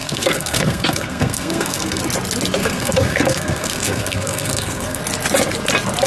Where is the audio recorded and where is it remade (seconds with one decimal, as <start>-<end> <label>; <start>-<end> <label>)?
0.0-2.0 remade; 2.0-2.6 recorded; 2.6-5.0 remade; 5.0-6.1 recorded